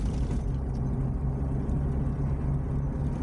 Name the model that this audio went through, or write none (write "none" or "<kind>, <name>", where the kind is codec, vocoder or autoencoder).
none